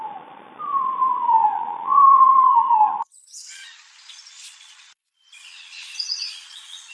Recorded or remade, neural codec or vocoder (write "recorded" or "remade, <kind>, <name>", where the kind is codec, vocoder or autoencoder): remade, vocoder, Vocos